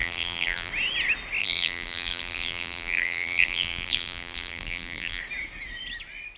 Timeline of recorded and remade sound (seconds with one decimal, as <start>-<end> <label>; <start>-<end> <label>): 0.0-0.7 remade; 0.7-1.4 recorded; 1.4-5.2 remade; 5.2-6.4 recorded